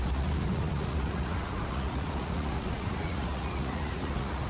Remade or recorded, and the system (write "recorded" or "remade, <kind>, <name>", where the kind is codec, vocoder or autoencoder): remade, vocoder, Vocos